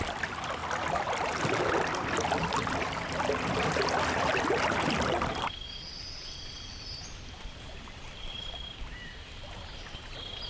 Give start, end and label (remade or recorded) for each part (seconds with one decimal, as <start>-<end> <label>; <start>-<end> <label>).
0.0-0.6 remade; 0.6-1.7 recorded; 1.7-10.5 remade